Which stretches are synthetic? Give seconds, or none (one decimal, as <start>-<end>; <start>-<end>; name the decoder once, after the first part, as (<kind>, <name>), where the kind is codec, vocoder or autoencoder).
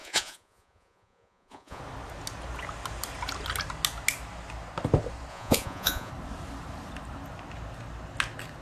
0.0-1.8 (vocoder, Vocos); 5.3-6.1